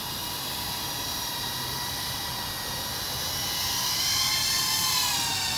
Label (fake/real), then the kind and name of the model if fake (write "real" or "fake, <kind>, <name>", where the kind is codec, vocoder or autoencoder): real